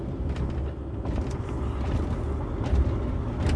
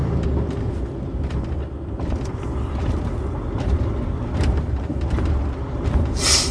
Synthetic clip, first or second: second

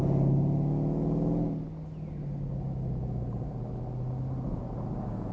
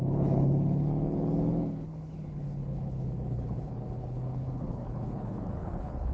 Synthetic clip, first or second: second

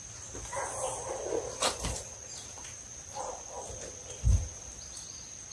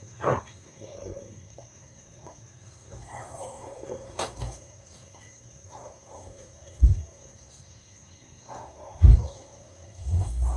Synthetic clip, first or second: second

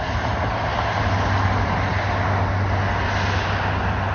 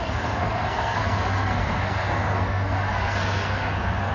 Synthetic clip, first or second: second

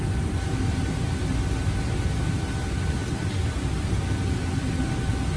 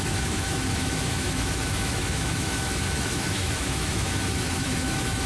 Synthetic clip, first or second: second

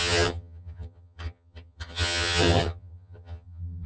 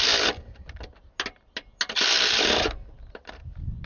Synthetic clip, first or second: first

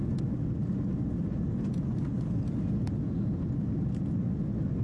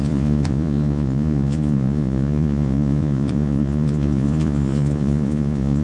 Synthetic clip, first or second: second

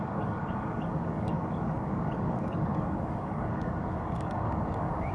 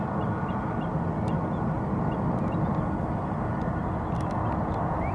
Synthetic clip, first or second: first